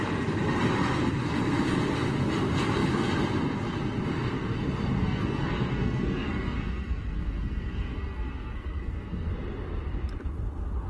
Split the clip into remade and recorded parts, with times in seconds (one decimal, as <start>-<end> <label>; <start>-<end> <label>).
0.0-5.0 recorded; 5.0-9.3 remade; 9.3-10.9 recorded